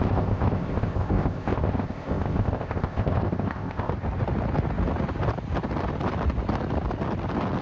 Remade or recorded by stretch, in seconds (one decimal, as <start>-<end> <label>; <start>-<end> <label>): 0.0-3.9 remade; 3.9-7.6 recorded